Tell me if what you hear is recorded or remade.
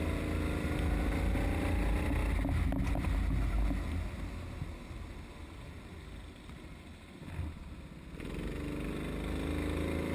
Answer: recorded